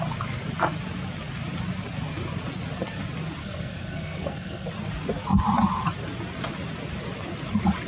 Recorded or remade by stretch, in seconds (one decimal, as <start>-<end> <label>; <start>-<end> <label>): 0.0-3.4 recorded; 3.4-4.7 remade; 4.7-7.9 recorded